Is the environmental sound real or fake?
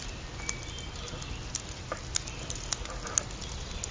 real